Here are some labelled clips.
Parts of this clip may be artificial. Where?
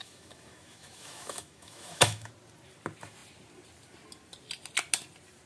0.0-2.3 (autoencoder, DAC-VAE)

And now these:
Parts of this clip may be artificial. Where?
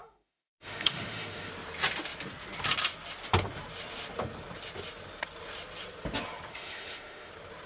0.0-1.5 (autoencoder, DAC-VAE); 6.5-7.3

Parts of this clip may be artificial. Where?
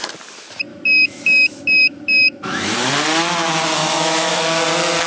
0.7-2.9 (autoencoder, DAC-VAE); 3.8-4.4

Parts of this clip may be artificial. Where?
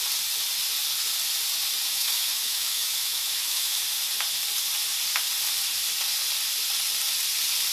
1.9-3.8 (autoencoder, DAC-VAE)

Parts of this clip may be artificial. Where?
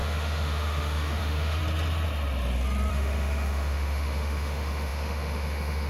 0.0-1.6 (autoencoder, DAC-VAE); 2.9-5.9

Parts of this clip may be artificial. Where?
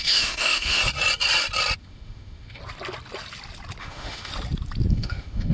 0.0-0.8 (autoencoder, DAC-VAE); 1.8-2.6; 3.8-4.3; 4.9-5.5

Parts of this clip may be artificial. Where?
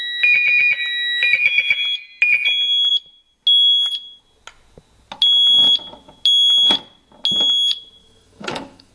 8.0-8.9 (autoencoder, DAC-VAE)